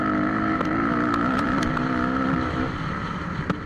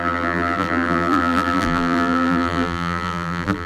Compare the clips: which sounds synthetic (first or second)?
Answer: second